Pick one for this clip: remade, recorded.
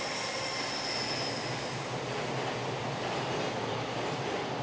recorded